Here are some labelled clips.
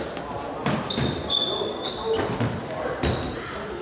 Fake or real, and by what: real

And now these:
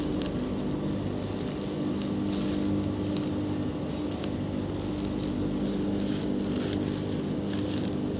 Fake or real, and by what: real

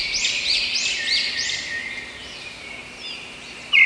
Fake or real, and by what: real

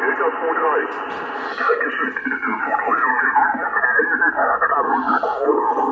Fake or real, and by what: real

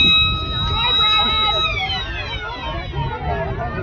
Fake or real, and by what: real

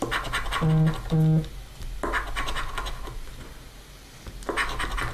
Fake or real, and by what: real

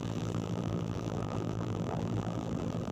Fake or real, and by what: fake, vocoder, BigVGAN v2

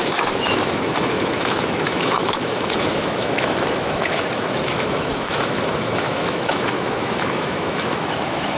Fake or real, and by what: fake, autoencoder, DAC-VAE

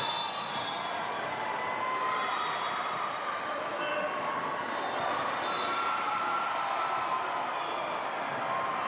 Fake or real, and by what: real